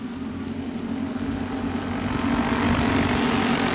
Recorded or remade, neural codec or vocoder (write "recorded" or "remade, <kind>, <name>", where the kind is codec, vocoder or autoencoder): recorded